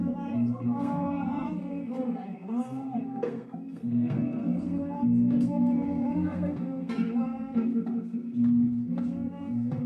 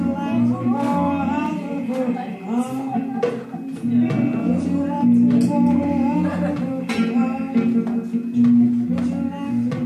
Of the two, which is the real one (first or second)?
second